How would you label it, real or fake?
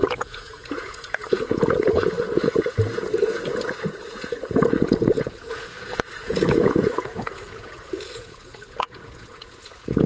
fake